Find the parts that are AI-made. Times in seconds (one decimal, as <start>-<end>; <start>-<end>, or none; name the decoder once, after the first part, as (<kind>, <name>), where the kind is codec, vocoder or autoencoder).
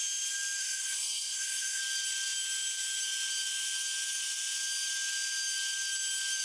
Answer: 0.6-1.8 (codec, SNAC)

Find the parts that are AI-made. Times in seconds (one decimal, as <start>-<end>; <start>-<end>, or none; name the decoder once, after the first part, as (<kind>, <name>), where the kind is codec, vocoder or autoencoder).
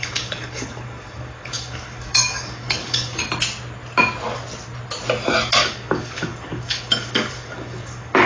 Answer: 0.0-3.2 (codec, DAC); 5.6-8.3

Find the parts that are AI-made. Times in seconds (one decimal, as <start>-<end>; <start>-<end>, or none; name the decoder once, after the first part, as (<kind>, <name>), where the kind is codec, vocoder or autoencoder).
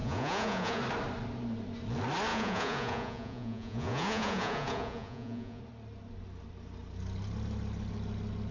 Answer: 0.0-0.8 (vocoder, Vocos); 2.3-5.6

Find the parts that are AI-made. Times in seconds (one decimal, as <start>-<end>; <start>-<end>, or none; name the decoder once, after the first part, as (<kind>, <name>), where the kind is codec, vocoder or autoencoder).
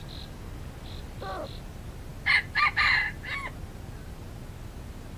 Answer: none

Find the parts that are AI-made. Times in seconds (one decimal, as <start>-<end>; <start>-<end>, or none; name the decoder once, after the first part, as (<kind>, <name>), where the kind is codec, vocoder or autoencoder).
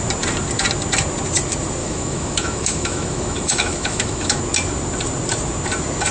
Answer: 1.8-4.4 (autoencoder, DAC-VAE)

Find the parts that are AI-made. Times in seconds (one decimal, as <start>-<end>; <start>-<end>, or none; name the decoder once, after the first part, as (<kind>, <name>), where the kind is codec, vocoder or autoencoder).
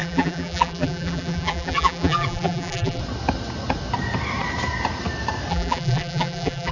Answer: 0.0-3.0 (vocoder, BigVGAN v2); 5.5-6.7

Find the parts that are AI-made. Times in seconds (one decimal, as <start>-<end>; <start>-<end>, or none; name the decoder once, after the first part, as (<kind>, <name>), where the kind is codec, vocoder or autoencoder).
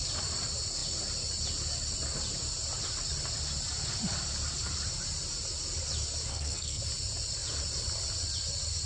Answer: 6.3-6.8 (codec, SNAC)